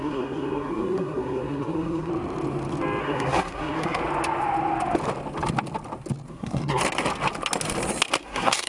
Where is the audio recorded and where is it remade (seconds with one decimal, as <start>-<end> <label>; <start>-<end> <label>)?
0.0-2.1 remade; 2.1-3.0 recorded; 3.0-4.0 remade; 4.0-6.3 recorded; 6.3-6.8 remade; 6.8-8.2 recorded; 8.2-8.7 remade